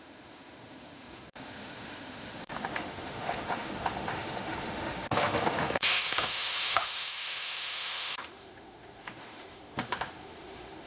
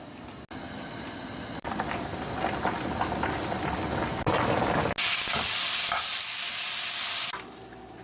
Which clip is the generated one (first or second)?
first